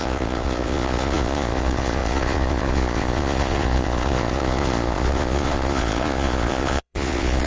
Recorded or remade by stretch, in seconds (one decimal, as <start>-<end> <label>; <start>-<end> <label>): 0.0-7.5 remade